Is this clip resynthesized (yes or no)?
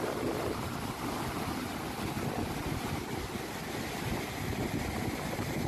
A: no